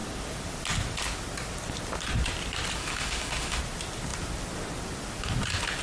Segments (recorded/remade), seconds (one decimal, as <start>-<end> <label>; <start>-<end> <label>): 0.0-2.8 recorded; 2.8-3.6 remade; 3.6-5.8 recorded